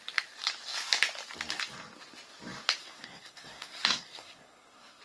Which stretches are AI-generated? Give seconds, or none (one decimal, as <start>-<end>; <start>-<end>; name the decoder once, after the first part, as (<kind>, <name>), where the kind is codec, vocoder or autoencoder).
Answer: 2.8-5.0 (codec, SNAC)